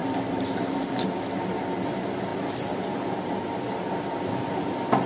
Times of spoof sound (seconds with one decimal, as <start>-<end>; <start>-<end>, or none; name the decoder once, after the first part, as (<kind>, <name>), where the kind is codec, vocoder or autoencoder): 0.0-0.9 (vocoder, BigVGAN v2)